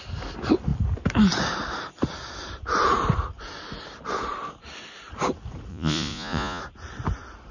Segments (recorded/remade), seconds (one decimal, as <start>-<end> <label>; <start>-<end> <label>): 0.0-5.7 recorded; 5.7-6.6 remade; 6.6-7.5 recorded